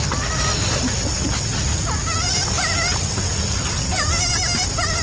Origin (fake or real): real